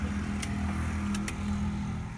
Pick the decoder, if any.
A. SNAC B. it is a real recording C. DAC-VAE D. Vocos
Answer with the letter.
B